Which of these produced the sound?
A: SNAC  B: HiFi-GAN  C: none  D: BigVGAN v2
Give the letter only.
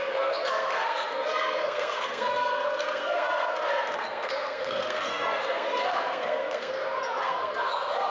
A